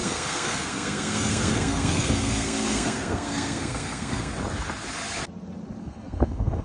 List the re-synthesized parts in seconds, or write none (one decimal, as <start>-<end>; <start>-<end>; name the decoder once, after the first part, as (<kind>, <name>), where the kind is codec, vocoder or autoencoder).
0.0-4.3 (codec, SNAC); 5.8-6.6